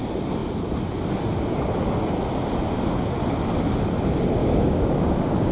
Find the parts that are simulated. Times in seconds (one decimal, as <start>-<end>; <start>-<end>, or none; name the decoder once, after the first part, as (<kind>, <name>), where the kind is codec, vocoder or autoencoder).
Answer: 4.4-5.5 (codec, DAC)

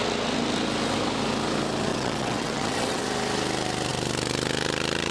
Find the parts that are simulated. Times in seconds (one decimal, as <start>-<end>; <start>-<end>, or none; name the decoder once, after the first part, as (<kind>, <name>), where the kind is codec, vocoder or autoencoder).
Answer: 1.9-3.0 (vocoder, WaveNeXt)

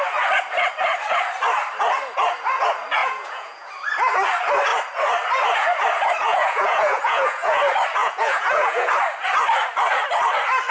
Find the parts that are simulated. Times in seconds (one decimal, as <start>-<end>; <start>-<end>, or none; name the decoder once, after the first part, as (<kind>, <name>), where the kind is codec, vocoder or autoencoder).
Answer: 3.0-3.7 (vocoder, Vocos); 6.3-7.6; 8.0-8.9

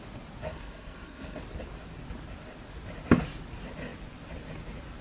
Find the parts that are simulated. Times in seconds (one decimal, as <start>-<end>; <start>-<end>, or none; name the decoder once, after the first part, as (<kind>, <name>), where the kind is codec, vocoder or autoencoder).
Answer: 0.5-1.4 (codec, SNAC)